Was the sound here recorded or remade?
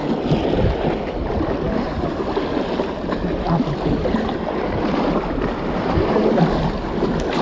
recorded